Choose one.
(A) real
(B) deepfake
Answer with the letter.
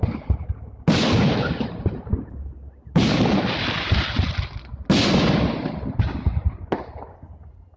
A